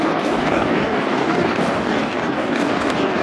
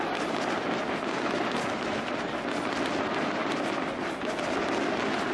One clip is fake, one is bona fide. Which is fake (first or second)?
first